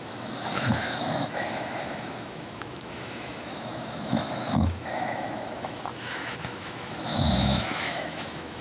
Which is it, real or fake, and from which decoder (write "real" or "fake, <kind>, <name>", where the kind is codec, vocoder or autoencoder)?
fake, autoencoder, DAC-VAE